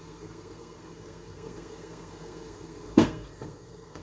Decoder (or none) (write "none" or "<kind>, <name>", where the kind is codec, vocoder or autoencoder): codec, SNAC